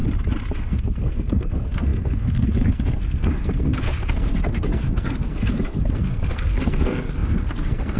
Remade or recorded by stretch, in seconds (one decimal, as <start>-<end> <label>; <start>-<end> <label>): 0.0-0.6 recorded; 0.6-8.0 remade

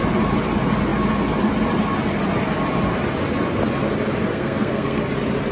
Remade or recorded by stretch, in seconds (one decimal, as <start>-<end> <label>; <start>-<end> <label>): 0.0-4.3 recorded; 4.3-5.0 remade; 5.0-5.5 recorded

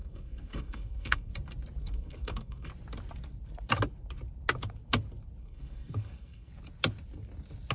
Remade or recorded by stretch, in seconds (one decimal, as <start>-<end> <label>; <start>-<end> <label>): 0.0-1.3 remade; 1.3-1.8 recorded; 1.8-2.7 remade; 2.7-5.4 recorded; 5.4-6.5 remade; 6.5-7.7 recorded

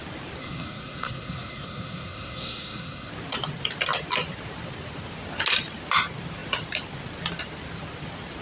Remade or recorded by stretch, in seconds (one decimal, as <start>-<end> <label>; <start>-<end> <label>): 0.0-0.4 recorded; 0.4-3.1 remade; 3.1-8.4 recorded

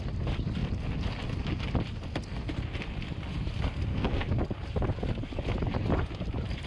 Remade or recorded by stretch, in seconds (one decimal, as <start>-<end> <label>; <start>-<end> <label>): 0.0-3.9 recorded; 3.9-4.4 remade; 4.4-6.7 recorded

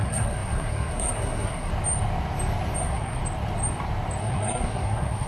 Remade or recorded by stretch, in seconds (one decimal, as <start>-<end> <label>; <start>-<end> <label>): 0.0-1.7 remade; 1.7-2.8 recorded; 2.8-3.2 remade; 3.2-4.2 recorded; 4.2-5.3 remade

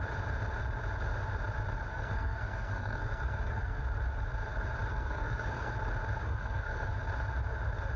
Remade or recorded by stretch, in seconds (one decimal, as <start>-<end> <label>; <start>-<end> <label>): 0.0-1.9 recorded; 1.9-3.8 remade; 3.8-4.9 recorded; 4.9-5.7 remade; 5.7-6.2 recorded; 6.2-6.9 remade; 6.9-8.0 recorded